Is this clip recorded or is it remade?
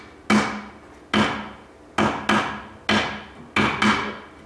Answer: recorded